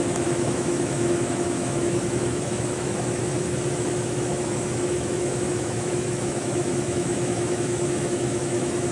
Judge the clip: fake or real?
fake